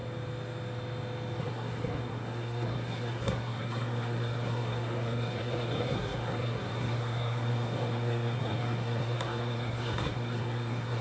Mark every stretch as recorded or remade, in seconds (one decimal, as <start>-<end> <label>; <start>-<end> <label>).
0.0-1.4 recorded; 1.4-11.0 remade